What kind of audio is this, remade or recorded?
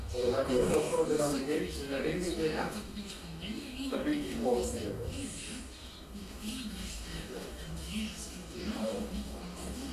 remade